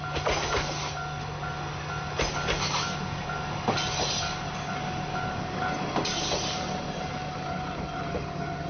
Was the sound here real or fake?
real